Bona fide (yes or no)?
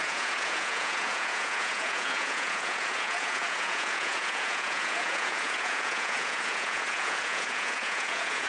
no